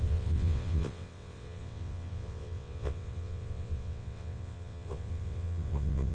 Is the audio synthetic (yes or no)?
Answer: yes